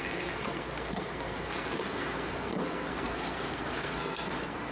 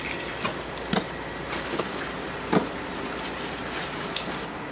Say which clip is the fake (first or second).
first